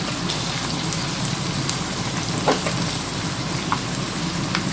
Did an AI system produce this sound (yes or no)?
no